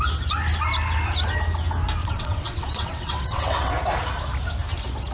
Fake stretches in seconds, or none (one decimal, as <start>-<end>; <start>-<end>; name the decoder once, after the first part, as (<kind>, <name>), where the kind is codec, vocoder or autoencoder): 2.0-3.7 (vocoder, WaveNeXt)